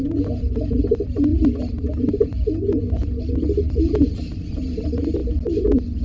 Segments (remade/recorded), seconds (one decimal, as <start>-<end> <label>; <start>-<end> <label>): 0.0-6.0 recorded